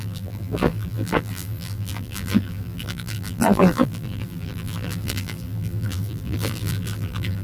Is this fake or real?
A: fake